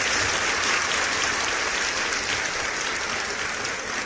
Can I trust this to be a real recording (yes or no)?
no